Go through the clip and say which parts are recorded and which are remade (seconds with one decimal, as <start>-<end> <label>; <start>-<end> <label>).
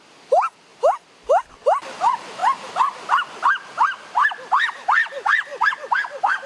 0.0-6.5 recorded